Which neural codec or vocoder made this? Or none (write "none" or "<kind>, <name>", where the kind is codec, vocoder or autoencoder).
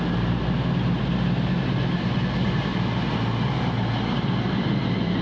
none